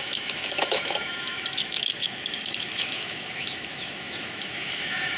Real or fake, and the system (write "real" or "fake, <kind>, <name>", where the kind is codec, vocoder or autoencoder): fake, autoencoder, DAC-VAE